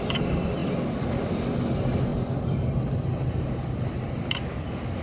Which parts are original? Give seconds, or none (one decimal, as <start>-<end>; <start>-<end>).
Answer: 0.0-5.0

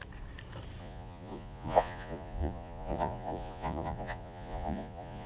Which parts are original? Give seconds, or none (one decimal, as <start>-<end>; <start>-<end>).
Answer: 0.0-0.8

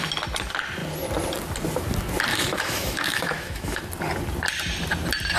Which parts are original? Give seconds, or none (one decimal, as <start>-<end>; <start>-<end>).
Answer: 0.0-2.3; 3.8-5.4

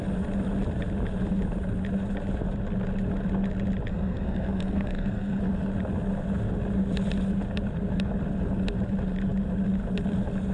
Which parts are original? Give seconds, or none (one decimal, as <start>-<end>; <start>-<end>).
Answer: 0.0-3.9; 5.4-10.5

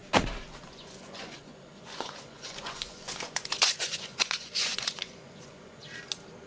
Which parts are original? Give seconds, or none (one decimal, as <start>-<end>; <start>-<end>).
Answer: 0.0-0.6; 5.8-6.5

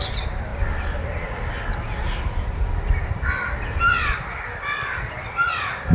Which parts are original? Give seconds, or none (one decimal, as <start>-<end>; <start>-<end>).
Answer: 0.0-5.9